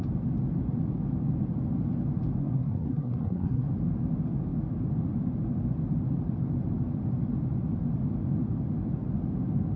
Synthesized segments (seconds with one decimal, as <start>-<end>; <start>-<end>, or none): 2.4-3.7